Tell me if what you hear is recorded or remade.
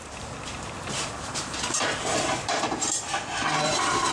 remade